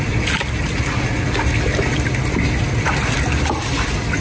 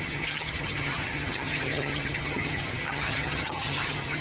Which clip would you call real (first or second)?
first